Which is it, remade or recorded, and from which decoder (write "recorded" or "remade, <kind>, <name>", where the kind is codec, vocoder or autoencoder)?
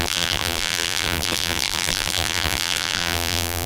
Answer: remade, vocoder, BigVGAN v2